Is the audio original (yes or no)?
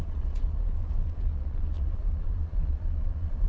no